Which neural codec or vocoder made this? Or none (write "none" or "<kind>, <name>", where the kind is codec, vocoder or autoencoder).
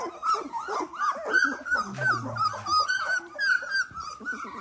none